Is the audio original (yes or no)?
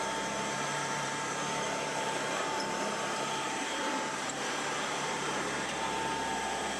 no